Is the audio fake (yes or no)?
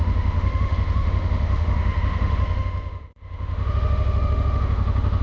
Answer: yes